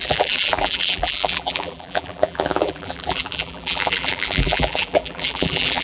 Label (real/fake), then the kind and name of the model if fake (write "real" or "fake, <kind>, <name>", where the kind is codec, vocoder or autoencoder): fake, vocoder, BigVGAN v2